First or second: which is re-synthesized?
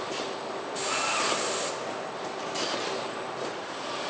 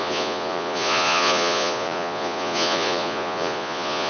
second